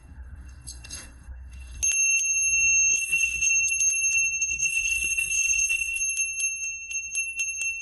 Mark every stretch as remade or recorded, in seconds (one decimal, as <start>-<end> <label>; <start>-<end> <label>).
0.0-1.8 remade; 1.8-2.9 recorded; 2.9-3.5 remade; 3.5-4.5 recorded; 4.5-6.0 remade; 6.0-7.8 recorded